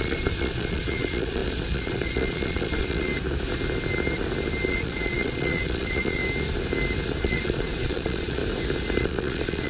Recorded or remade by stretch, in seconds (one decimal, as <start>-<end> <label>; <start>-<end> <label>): 0.0-3.1 remade; 3.1-4.7 recorded; 4.7-6.2 remade; 6.2-7.2 recorded; 7.2-8.4 remade; 8.4-9.0 recorded; 9.0-9.7 remade